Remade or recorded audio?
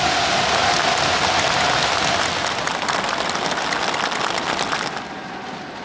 recorded